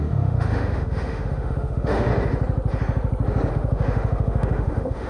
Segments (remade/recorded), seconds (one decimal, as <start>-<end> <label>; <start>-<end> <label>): 0.0-2.1 remade; 2.1-3.5 recorded; 3.5-5.1 remade